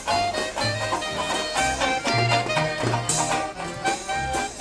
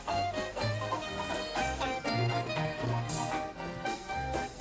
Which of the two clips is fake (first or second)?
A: second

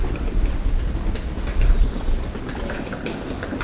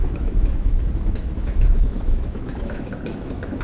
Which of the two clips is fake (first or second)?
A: second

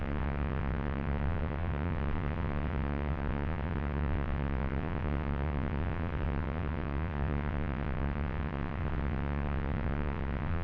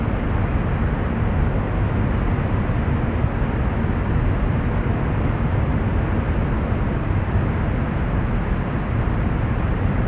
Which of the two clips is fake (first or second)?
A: first